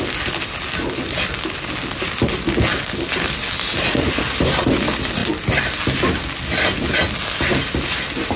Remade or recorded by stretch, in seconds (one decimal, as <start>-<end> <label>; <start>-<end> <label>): 0.0-8.4 recorded

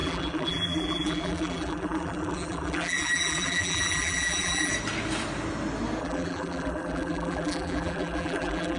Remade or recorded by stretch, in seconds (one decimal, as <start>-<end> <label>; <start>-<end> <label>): 0.0-4.7 remade; 4.7-6.0 recorded; 6.0-8.8 remade